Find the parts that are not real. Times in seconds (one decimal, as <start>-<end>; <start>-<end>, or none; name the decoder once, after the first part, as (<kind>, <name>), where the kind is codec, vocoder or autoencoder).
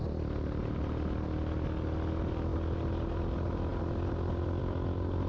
none